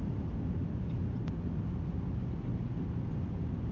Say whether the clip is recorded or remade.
recorded